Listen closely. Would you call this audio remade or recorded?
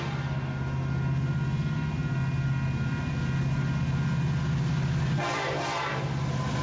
recorded